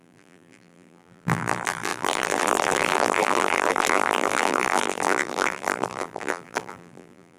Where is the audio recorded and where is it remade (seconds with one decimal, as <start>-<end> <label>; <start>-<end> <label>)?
0.0-7.4 remade